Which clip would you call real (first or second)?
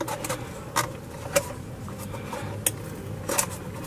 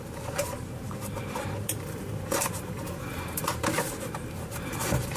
first